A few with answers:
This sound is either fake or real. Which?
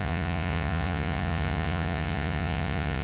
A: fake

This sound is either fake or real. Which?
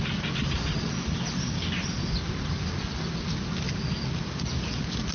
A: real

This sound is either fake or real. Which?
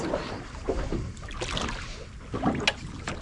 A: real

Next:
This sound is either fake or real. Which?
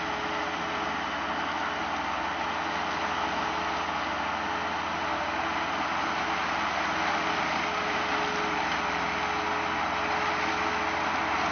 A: real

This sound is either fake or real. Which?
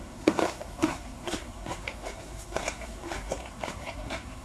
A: fake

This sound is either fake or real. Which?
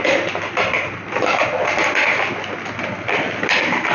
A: real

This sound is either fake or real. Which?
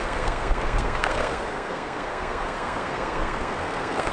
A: fake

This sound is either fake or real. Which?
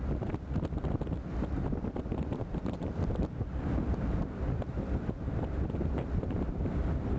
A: fake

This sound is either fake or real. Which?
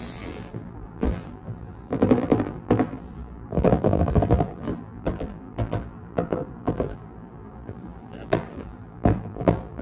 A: fake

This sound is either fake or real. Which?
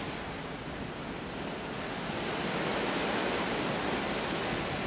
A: real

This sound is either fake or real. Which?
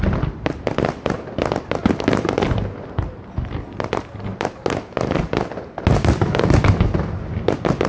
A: real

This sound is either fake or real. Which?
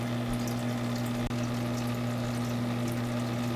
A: real